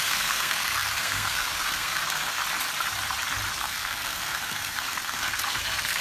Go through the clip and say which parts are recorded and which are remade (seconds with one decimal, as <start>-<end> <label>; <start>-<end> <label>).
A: 0.0-2.4 remade; 2.4-3.5 recorded; 3.5-6.0 remade